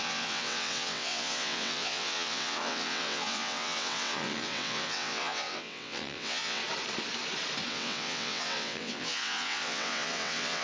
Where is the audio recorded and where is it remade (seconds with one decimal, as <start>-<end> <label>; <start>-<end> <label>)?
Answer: 0.0-6.6 remade; 6.6-7.7 recorded; 7.7-10.6 remade